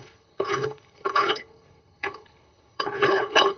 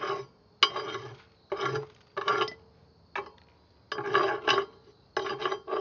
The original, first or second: second